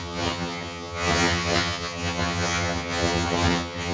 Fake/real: fake